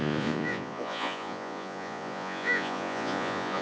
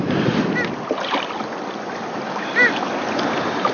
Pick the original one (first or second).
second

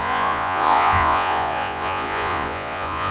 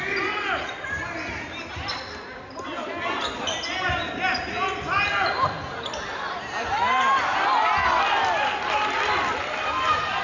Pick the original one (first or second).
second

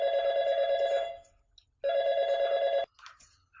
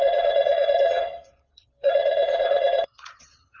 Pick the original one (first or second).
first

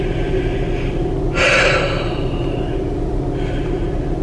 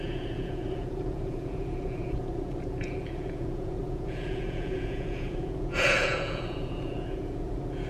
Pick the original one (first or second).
first